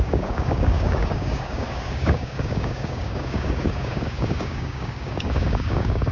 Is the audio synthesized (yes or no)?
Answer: yes